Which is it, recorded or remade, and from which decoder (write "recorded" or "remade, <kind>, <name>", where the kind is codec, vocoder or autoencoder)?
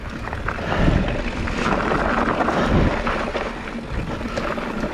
recorded